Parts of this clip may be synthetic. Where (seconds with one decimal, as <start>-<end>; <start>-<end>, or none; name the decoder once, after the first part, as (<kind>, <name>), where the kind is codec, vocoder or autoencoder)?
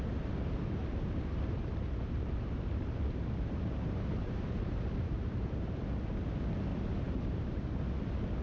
0.8-5.8 (vocoder, BigVGAN v2); 6.7-7.8